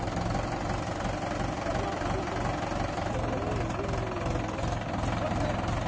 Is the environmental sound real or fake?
real